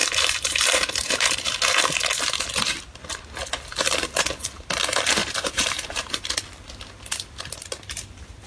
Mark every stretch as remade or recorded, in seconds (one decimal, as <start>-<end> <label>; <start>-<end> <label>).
0.0-1.8 remade; 1.8-5.2 recorded; 5.2-6.3 remade; 6.3-8.5 recorded